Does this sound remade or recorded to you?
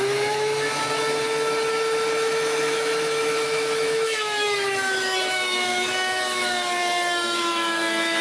remade